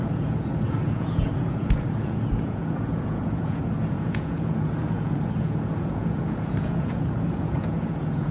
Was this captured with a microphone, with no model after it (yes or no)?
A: no